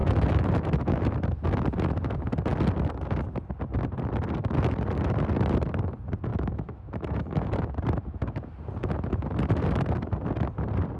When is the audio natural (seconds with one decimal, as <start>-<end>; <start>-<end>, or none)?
1.1-6.3; 7.7-11.0